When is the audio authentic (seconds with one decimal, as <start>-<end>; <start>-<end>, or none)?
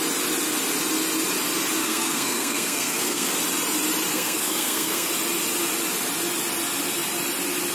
0.0-1.8; 3.3-4.1; 5.1-7.7